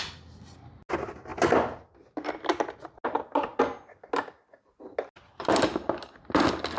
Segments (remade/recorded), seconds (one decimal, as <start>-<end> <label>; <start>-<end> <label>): 0.0-6.8 recorded